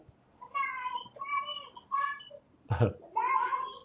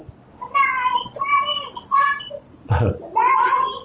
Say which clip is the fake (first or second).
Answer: first